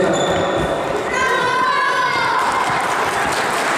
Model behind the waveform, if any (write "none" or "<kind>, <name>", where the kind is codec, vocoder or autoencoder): none